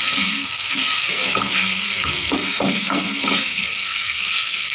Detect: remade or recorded remade